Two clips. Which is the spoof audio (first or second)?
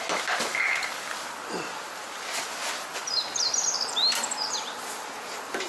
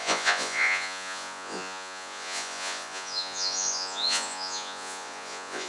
second